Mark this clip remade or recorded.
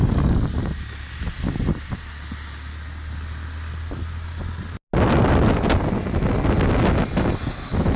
recorded